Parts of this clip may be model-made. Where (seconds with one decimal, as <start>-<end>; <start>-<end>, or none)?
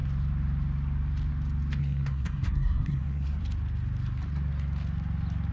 1.8-3.4